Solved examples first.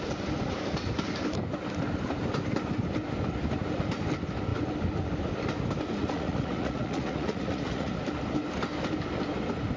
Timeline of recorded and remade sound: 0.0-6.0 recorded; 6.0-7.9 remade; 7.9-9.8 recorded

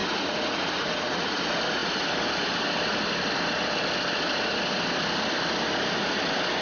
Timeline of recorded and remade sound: 0.0-1.4 remade; 1.4-6.6 recorded

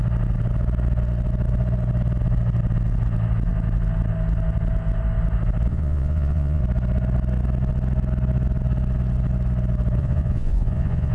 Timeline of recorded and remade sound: 0.0-5.7 recorded; 5.7-6.6 remade; 6.6-10.0 recorded; 10.0-11.1 remade

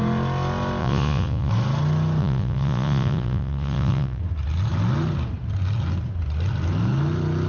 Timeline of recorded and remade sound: 0.0-0.8 recorded; 0.8-1.5 remade; 1.5-2.2 recorded; 2.2-4.2 remade; 4.2-7.5 recorded